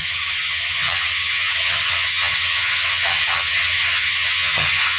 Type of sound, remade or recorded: remade